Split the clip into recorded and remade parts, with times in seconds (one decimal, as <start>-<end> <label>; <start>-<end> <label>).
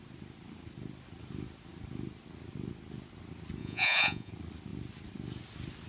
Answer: 0.0-3.6 recorded; 3.6-4.3 remade; 4.3-5.9 recorded